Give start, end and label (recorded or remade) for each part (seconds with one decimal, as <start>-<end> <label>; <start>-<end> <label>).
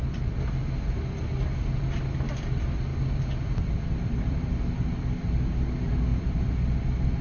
0.0-2.9 recorded; 2.9-4.5 remade; 4.5-6.1 recorded; 6.1-6.7 remade; 6.7-7.2 recorded